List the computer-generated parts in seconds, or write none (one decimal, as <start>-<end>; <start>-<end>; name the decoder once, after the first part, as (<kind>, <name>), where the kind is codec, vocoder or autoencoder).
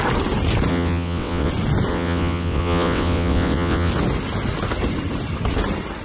0.7-1.5 (vocoder, WaveNeXt); 1.9-3.9